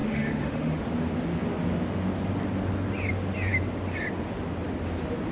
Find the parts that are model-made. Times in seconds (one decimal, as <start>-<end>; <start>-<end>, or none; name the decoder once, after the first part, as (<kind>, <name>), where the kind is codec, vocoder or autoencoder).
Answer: 0.0-0.8 (autoencoder, DAC-VAE)